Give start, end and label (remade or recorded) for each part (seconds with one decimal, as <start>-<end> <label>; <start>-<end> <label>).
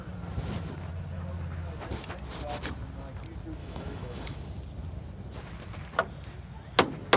0.0-3.6 recorded; 3.6-4.4 remade; 4.4-7.2 recorded